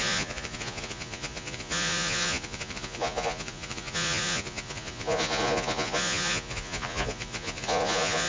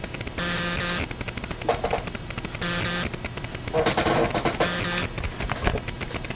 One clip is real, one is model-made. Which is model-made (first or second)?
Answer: first